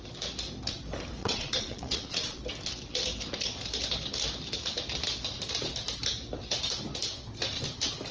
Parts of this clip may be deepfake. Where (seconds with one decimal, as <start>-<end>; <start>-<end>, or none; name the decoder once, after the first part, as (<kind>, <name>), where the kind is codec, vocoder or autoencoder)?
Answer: 1.2-2.4 (vocoder, Vocos)